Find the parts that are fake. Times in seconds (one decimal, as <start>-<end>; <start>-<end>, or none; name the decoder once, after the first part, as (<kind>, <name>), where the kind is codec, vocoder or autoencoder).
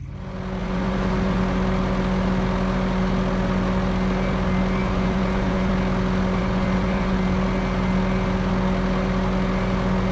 0.6-1.4 (vocoder, Vocos); 4.8-5.7; 6.4-7.2